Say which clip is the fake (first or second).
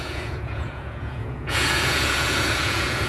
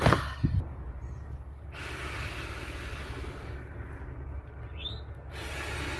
first